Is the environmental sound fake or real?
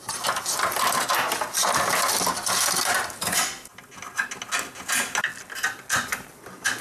real